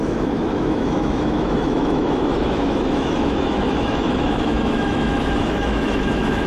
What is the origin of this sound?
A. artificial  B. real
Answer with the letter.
A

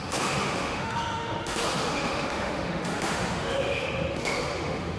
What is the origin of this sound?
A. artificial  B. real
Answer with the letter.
A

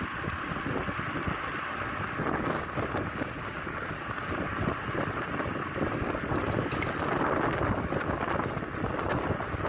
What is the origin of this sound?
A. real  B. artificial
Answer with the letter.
A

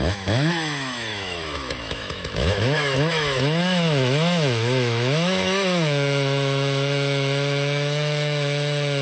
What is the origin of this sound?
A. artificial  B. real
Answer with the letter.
A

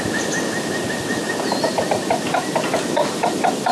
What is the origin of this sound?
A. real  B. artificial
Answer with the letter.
A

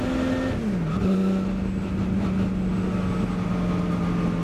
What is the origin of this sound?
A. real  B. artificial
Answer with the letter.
A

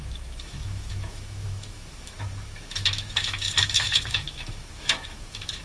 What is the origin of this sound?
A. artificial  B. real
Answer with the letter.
A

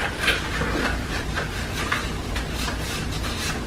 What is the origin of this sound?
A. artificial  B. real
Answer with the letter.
B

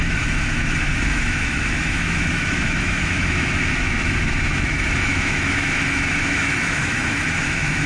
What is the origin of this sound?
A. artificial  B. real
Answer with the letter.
A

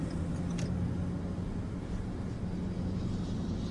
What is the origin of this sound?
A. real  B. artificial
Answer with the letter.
A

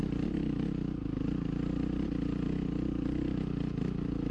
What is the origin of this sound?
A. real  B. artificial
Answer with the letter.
A